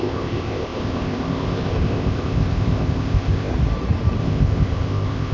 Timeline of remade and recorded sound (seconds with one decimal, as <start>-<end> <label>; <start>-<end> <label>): 0.0-3.5 remade; 3.5-4.2 recorded; 4.2-5.3 remade